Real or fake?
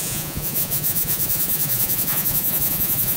fake